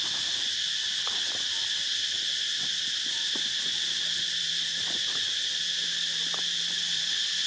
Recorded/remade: recorded